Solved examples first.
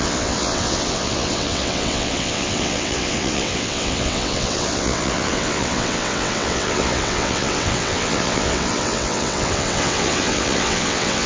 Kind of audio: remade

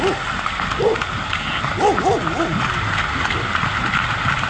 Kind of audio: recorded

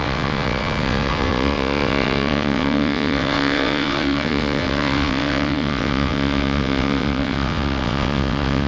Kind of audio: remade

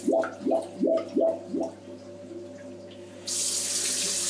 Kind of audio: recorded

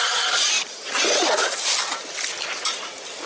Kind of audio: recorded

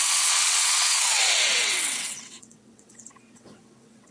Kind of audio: remade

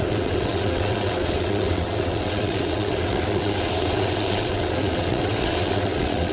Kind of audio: remade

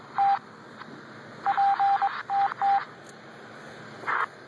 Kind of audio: recorded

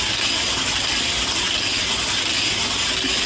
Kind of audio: recorded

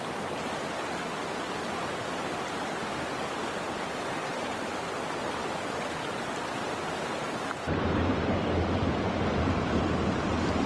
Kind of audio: recorded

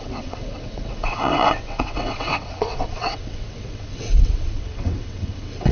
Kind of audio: remade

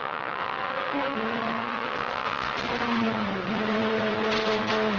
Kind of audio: remade